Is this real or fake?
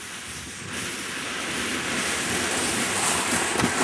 real